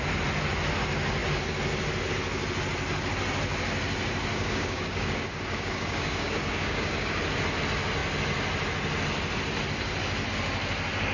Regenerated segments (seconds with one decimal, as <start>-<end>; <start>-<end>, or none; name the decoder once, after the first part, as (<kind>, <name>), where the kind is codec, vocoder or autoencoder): 4.3-7.2 (codec, DAC)